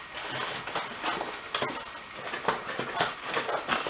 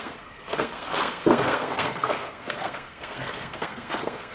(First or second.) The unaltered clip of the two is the first